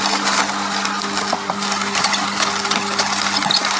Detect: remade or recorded recorded